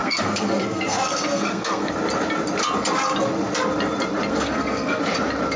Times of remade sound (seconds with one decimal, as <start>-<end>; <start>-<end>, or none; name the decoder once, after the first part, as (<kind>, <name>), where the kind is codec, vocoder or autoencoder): 0.0-1.9 (codec, SNAC); 4.3-5.0